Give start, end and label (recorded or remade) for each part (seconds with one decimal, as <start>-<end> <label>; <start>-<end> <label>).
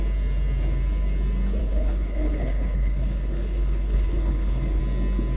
0.0-1.6 recorded; 1.6-4.8 remade; 4.8-5.4 recorded